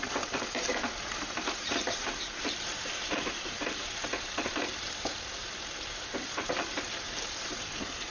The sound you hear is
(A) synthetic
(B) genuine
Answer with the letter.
A